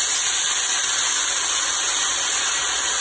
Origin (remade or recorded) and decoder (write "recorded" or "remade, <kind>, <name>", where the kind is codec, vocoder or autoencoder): recorded